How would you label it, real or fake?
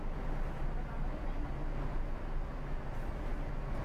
real